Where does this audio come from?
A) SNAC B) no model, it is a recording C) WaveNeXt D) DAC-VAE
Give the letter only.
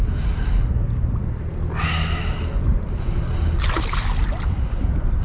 B